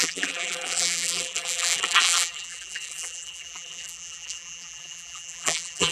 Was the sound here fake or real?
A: fake